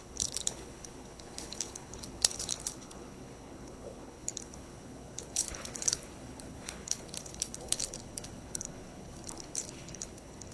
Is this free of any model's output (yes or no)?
no